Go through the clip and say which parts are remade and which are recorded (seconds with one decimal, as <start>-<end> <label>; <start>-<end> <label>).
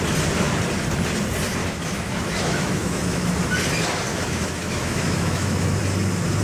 0.0-1.6 recorded; 1.6-3.3 remade; 3.3-4.1 recorded; 4.1-5.8 remade; 5.8-6.4 recorded